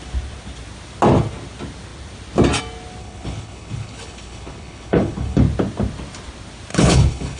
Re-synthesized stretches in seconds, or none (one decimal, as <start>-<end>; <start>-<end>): 3.0-5.4; 6.7-7.4